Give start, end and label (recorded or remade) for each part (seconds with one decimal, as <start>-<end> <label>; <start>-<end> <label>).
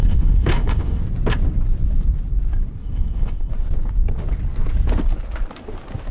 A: 0.0-1.0 remade; 1.0-2.8 recorded; 2.8-3.5 remade; 3.5-6.1 recorded